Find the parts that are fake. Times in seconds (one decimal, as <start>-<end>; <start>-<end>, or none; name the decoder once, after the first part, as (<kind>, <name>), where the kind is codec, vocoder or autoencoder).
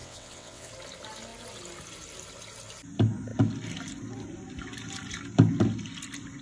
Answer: 0.0-0.7 (vocoder, WaveNeXt)